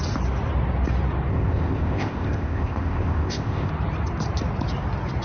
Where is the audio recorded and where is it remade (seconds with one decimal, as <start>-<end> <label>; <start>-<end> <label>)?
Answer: 0.0-1.3 recorded; 1.3-3.7 remade; 3.7-5.2 recorded